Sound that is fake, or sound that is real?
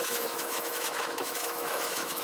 fake